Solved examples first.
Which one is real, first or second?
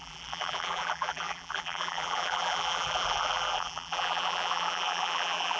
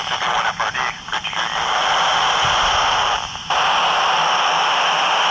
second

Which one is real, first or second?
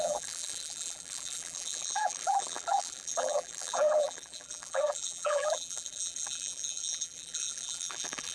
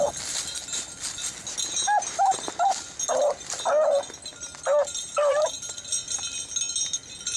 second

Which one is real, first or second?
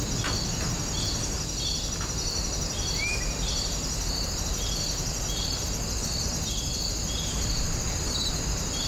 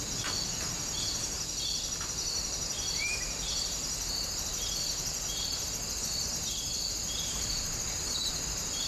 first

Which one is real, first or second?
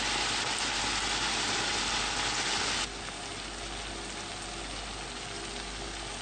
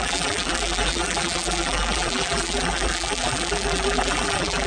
first